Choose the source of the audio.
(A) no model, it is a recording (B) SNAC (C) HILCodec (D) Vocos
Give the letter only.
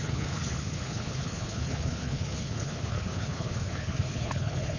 C